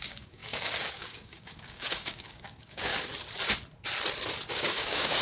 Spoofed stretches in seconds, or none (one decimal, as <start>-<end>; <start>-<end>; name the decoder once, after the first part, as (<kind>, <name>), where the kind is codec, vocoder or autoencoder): 0.0-2.9 (codec, DAC); 4.5-5.2